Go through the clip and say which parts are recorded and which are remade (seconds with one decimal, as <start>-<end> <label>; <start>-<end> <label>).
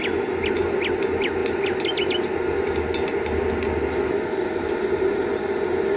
0.0-6.0 recorded